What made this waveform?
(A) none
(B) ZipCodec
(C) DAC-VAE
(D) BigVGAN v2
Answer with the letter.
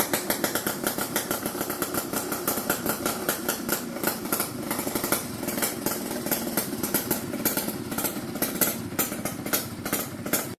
D